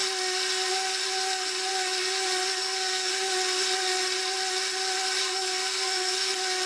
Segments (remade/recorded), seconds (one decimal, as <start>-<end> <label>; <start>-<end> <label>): 0.0-2.5 recorded; 2.5-3.1 remade; 3.1-5.2 recorded; 5.2-6.3 remade; 6.3-6.7 recorded